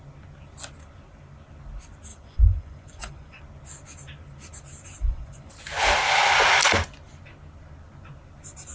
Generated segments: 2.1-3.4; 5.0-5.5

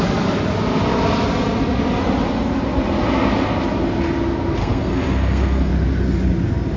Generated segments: 4.6-5.7